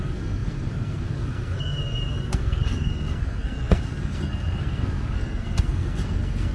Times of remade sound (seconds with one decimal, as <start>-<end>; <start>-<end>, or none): 0.0-6.5

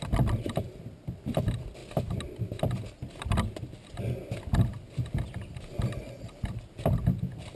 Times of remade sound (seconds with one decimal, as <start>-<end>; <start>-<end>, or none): none

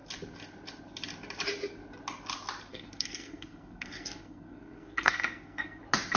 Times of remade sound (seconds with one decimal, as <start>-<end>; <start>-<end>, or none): 2.7-5.8

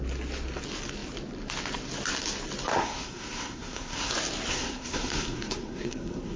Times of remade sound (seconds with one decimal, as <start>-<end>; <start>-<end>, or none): 2.7-4.1; 4.5-6.4

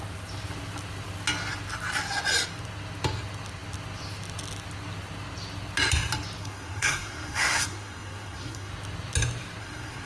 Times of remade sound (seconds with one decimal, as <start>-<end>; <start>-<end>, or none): 6.4-8.7; 9.6-10.1

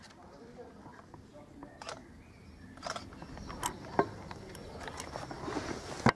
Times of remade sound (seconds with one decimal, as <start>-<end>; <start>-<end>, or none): none